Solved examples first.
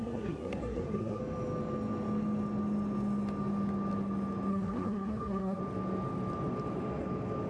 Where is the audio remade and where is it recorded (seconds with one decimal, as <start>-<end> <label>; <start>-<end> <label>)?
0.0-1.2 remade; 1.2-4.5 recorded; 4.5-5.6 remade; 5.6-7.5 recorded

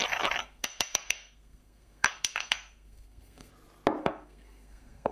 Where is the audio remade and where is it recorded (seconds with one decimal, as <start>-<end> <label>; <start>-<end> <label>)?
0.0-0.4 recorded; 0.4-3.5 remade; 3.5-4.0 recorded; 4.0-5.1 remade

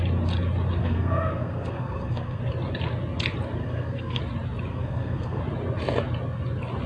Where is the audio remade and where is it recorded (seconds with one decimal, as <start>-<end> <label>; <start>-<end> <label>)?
0.0-0.8 recorded; 0.8-2.4 remade; 2.4-3.6 recorded; 3.6-4.2 remade; 4.2-4.7 recorded; 4.7-5.4 remade; 5.4-6.9 recorded

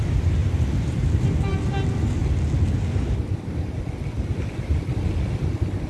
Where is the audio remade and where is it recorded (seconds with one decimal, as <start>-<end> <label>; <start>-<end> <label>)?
0.0-5.9 recorded

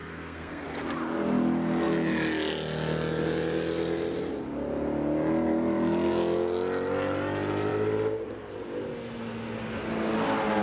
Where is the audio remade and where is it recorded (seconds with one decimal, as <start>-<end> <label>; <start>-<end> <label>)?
0.0-0.6 remade; 0.6-10.6 recorded

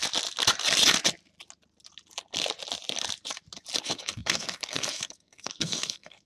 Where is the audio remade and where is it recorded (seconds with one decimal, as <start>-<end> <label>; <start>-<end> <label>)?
0.0-3.8 recorded; 3.8-6.3 remade